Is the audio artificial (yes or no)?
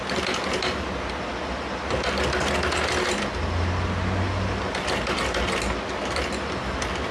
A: no